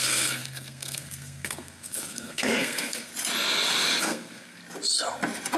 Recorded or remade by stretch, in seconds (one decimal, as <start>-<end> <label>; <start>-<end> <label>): 0.0-3.1 remade; 3.1-4.0 recorded; 4.0-4.6 remade; 4.6-5.6 recorded